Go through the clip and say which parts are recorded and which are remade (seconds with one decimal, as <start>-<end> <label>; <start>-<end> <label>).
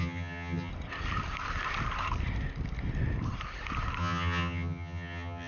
0.0-0.7 remade; 0.7-4.0 recorded; 4.0-5.5 remade